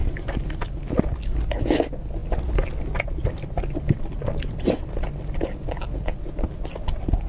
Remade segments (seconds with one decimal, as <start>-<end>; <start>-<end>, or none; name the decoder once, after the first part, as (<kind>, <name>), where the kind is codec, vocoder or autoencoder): 0.0-0.9 (vocoder, BigVGAN v2)